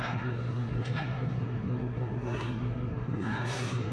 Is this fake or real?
fake